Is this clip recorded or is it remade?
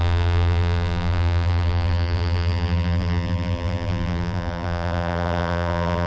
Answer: remade